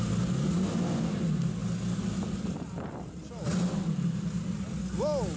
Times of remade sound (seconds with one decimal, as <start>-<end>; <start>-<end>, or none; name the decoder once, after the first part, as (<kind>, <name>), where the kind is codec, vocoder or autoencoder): none